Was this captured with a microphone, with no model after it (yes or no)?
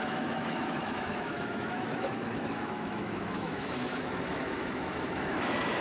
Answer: no